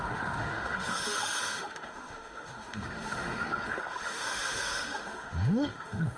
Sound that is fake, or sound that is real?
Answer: fake